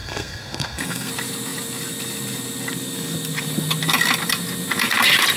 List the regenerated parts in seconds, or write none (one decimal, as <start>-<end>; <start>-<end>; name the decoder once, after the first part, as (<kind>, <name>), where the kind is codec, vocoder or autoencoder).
0.0-1.1 (codec, SNAC)